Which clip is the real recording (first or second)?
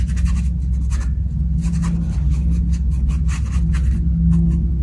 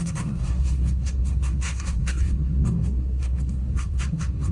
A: first